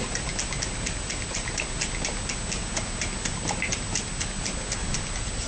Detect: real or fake real